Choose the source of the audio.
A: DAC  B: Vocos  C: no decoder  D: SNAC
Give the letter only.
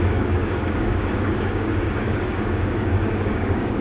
A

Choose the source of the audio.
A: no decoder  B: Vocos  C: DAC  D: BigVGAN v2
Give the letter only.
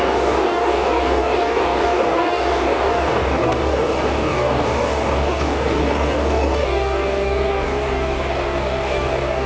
C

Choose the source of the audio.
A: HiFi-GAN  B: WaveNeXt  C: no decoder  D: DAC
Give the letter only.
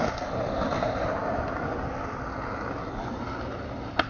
C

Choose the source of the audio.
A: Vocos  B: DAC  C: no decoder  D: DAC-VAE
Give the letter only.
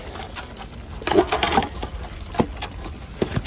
C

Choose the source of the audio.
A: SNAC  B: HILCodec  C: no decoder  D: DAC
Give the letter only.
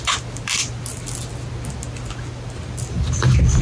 C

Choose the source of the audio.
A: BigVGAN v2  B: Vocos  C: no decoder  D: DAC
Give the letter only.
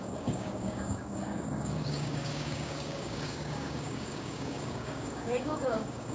D